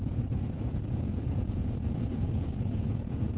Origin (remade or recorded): remade